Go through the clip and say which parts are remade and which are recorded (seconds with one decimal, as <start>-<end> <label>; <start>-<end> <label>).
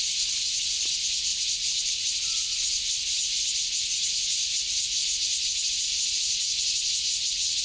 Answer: 0.0-7.6 recorded